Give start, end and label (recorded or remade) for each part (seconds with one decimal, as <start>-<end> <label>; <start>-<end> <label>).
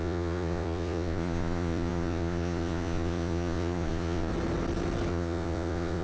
0.0-4.3 remade; 4.3-5.1 recorded; 5.1-6.0 remade